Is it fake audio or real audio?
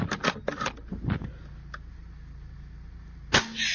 real